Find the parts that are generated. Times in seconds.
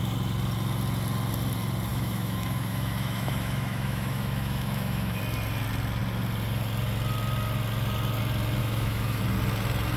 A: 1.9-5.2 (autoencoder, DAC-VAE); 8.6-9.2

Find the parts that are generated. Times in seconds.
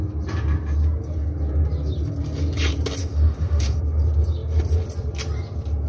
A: 3.0-3.8 (autoencoder, DAC-VAE)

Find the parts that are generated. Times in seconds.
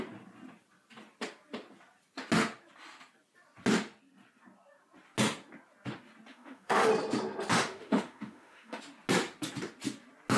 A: 6.3-6.9 (autoencoder, DAC-VAE); 7.5-8.8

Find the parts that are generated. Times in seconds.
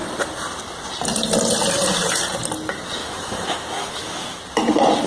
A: 3.0-4.4 (autoencoder, DAC-VAE)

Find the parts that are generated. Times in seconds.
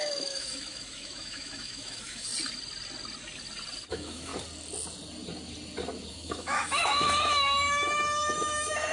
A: 0.0-2.3 (autoencoder, DAC-VAE); 3.9-4.3; 6.1-8.9